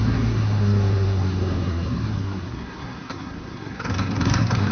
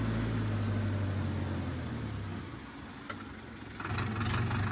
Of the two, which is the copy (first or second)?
first